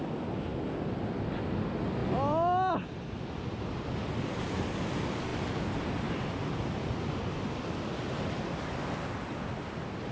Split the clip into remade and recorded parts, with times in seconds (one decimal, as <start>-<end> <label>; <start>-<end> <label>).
0.0-10.1 recorded